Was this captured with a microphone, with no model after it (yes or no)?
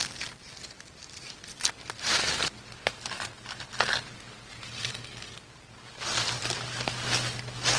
yes